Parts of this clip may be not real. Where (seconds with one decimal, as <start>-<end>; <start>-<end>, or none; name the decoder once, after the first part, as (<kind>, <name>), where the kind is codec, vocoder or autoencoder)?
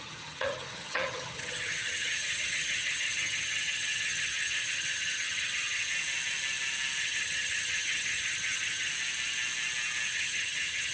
0.0-5.9 (vocoder, HiFi-GAN); 7.0-8.9; 10.1-10.9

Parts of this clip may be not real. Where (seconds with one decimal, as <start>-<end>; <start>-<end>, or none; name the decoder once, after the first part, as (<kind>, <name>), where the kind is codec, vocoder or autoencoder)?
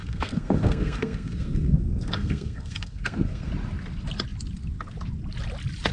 0.0-3.5 (codec, SNAC)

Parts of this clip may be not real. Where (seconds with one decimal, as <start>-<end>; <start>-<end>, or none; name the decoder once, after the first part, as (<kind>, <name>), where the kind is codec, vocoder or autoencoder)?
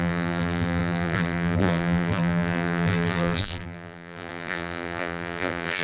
0.0-5.8 (vocoder, BigVGAN v2)